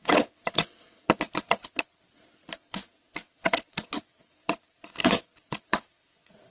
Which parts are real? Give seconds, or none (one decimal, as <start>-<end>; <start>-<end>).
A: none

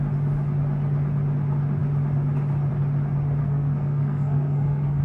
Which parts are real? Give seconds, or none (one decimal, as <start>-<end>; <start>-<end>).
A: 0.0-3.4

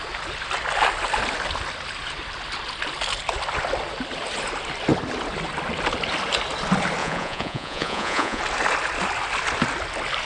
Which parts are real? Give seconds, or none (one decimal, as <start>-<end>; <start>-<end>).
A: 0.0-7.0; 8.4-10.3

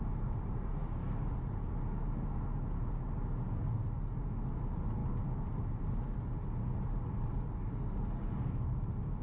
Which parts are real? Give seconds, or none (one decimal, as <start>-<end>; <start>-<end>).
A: 0.8-4.5; 5.0-8.5

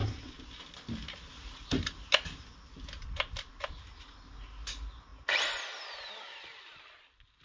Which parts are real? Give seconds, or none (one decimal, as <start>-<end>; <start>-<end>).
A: 0.0-7.4

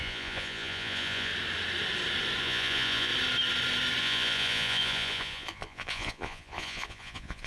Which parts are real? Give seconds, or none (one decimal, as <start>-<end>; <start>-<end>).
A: 1.3-2.4; 3.1-4.0

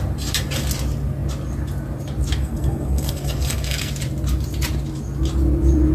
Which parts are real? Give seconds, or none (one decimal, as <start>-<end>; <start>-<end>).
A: 0.0-2.4; 3.9-5.9

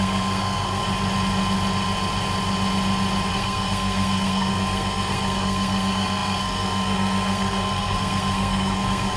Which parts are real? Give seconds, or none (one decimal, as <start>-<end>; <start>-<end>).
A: 0.8-3.3